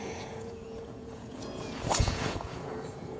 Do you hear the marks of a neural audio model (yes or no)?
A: yes